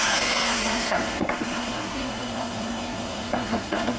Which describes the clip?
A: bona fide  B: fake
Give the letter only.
B